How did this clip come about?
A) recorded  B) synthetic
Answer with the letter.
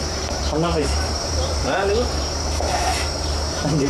B